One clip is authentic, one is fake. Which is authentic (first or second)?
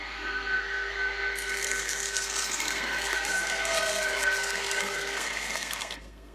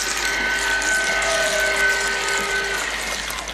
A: second